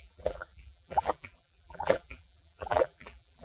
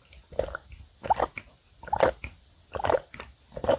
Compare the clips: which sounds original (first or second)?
second